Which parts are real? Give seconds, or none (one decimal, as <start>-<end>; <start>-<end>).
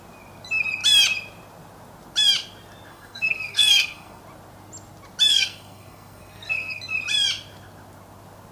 0.0-2.9; 4.2-5.3; 6.8-8.5